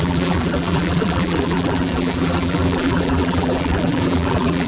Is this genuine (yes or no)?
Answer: no